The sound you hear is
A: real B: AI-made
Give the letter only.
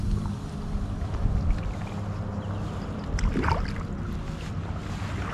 A